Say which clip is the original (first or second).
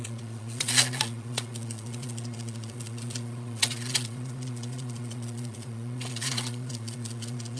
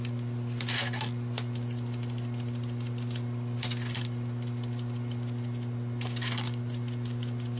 second